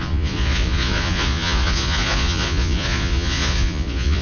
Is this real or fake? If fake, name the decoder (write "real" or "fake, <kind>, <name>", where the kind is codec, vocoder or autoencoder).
fake, vocoder, Vocos